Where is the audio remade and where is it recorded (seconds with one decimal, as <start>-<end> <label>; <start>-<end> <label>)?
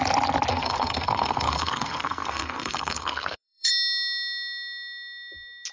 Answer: 0.0-0.5 recorded; 0.5-3.7 remade; 3.7-5.7 recorded